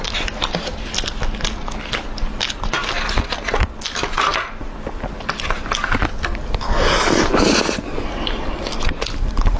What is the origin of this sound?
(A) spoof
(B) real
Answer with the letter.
B